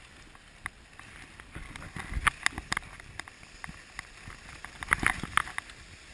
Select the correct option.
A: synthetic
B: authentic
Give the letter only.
B